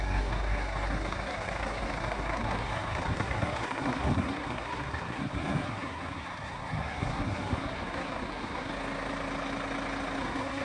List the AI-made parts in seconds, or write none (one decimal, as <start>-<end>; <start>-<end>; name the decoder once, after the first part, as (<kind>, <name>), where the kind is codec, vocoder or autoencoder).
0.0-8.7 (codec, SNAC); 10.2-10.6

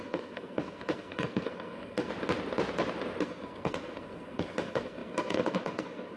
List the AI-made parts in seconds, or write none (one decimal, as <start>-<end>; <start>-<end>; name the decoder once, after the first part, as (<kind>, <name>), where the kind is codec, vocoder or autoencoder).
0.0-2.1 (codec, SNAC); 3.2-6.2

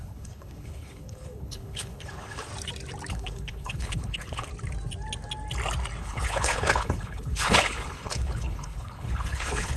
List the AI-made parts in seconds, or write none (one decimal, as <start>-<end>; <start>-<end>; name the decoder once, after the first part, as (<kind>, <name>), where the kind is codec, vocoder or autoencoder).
0.0-2.5 (codec, HILCodec); 3.1-4.5; 6.0-9.8

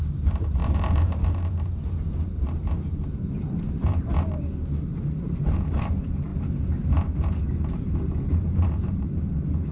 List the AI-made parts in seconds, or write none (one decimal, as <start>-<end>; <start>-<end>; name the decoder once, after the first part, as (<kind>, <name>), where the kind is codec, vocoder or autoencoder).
0.0-9.7 (vocoder, BigVGAN v2)

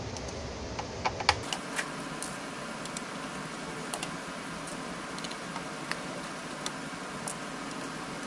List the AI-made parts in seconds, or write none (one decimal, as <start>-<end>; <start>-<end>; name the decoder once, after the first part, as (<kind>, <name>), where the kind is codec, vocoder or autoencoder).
none

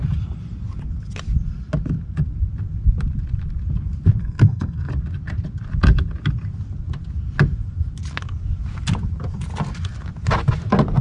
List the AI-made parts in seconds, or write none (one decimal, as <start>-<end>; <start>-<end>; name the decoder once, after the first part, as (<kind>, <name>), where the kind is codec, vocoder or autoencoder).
4.2-4.9 (codec, SNAC)

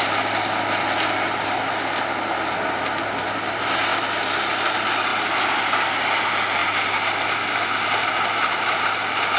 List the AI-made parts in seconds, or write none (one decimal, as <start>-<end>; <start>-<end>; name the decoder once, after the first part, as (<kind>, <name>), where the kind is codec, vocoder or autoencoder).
none